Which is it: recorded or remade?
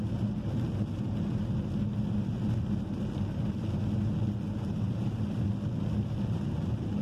recorded